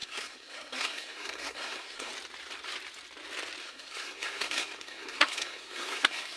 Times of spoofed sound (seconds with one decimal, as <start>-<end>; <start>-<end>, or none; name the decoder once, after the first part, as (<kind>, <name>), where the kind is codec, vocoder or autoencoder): 0.0-2.1 (codec, SNAC); 3.6-6.4